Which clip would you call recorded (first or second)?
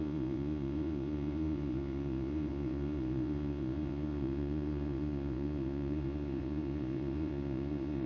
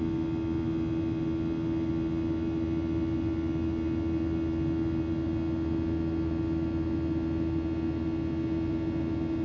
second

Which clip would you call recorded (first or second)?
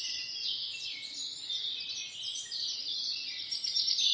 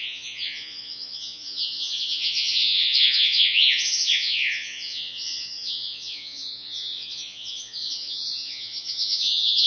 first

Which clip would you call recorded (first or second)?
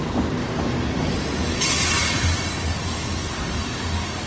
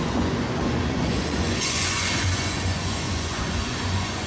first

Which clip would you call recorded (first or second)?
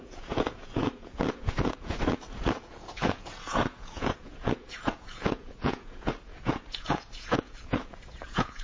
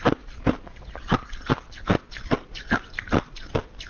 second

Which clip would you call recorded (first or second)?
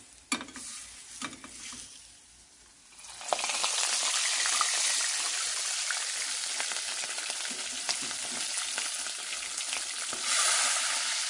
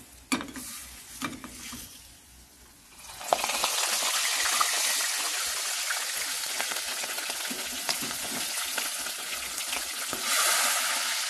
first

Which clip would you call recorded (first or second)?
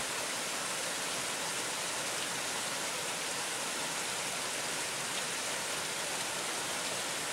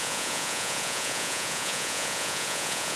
first